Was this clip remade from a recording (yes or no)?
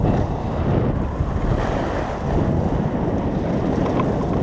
no